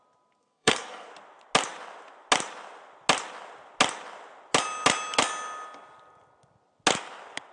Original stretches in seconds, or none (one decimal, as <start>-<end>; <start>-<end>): 0.0-0.4; 1.1-7.5